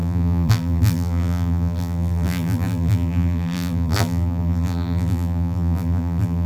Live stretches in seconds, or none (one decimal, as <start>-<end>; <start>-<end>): none